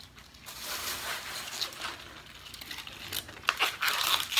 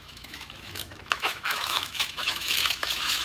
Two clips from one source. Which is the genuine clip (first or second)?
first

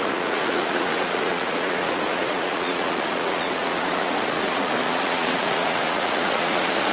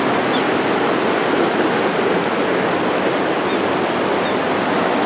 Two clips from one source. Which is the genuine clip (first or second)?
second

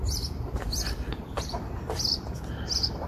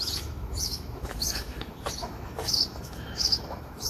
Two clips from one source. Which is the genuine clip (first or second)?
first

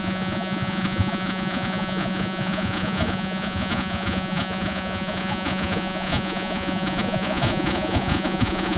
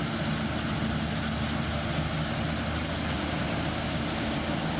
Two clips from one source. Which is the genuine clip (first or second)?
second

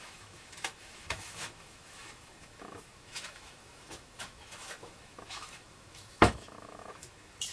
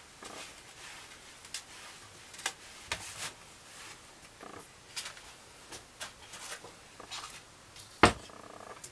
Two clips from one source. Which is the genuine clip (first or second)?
second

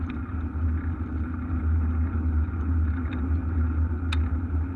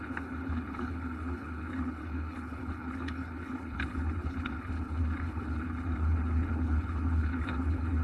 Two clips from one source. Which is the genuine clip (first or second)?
first